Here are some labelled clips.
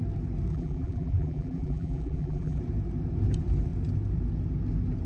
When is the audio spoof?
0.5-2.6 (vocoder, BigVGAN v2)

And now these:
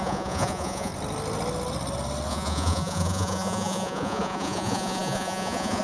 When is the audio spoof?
0.0-0.9 (vocoder, Vocos); 2.3-5.8

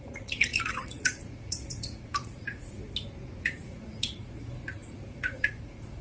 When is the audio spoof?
0.0-2.8 (vocoder, Vocos); 3.4-6.0

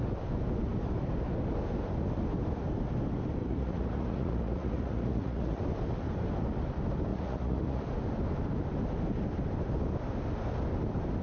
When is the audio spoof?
3.4-5.6 (vocoder, Vocos); 7.1-7.8